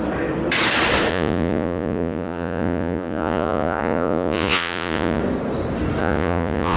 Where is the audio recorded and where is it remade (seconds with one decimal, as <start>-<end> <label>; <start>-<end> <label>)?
0.0-1.1 recorded; 1.1-5.2 remade; 5.2-6.0 recorded; 6.0-6.8 remade